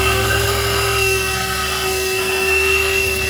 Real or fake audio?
fake